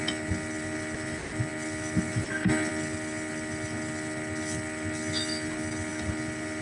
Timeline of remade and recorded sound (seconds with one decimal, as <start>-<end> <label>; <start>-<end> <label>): 0.0-6.6 recorded